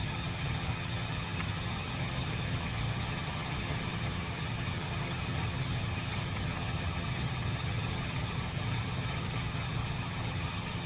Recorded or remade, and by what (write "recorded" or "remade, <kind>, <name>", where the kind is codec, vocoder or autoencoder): remade, vocoder, HiFi-GAN